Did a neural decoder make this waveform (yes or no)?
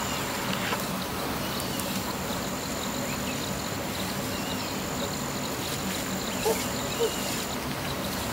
no